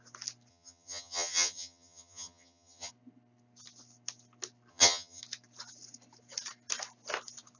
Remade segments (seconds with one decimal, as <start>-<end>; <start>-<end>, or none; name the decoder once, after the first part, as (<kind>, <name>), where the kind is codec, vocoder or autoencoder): 0.5-2.9 (vocoder, HiFi-GAN); 4.7-5.2